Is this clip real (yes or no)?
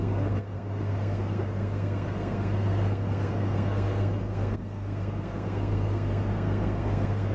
no